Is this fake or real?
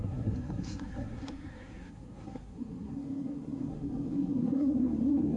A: fake